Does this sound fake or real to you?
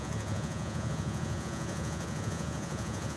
fake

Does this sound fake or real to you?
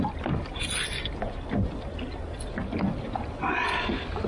real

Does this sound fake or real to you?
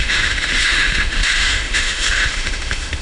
fake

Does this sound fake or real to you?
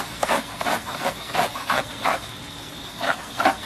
fake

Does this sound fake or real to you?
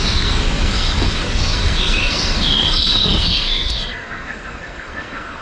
fake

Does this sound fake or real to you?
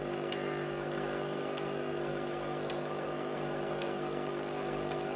fake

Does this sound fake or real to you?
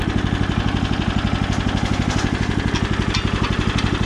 real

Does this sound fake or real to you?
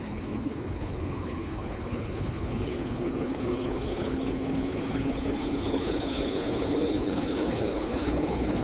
fake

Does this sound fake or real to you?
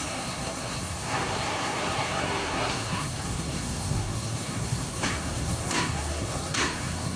fake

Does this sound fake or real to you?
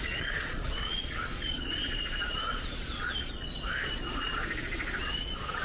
fake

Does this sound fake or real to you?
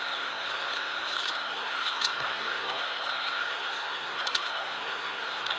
fake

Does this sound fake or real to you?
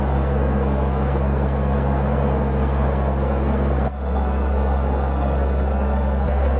fake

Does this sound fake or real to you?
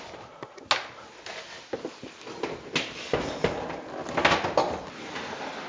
real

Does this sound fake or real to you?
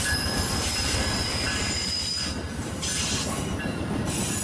fake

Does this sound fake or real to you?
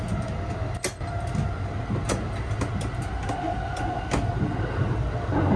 real